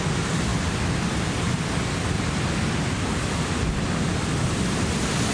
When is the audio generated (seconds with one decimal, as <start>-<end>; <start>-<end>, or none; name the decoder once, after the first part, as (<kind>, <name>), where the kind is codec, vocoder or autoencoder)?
none